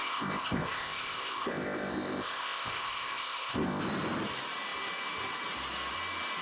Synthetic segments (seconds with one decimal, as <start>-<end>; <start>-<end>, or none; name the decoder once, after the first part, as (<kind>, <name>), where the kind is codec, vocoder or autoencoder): 0.0-3.8 (codec, ZipCodec)